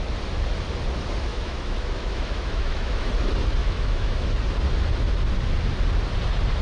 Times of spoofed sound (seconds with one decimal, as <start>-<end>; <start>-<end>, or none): 1.3-3.1; 3.6-4.3